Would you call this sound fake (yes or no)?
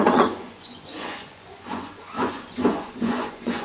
yes